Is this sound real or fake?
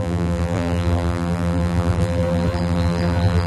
fake